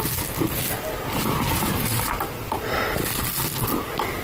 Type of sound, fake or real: real